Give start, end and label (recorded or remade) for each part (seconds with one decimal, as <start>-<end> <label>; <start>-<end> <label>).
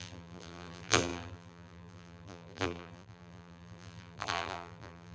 0.0-5.1 remade